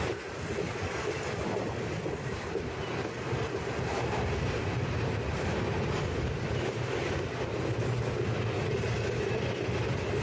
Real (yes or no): yes